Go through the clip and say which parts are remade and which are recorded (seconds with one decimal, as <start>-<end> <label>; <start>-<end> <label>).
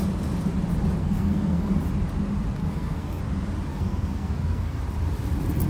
0.0-1.0 recorded; 1.0-1.7 remade; 1.7-2.6 recorded; 2.6-3.2 remade; 3.2-3.7 recorded; 3.7-4.8 remade; 4.8-5.7 recorded